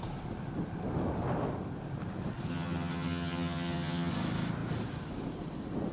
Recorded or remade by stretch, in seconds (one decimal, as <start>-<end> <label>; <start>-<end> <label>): 0.0-2.5 recorded; 2.5-4.1 remade; 4.1-5.9 recorded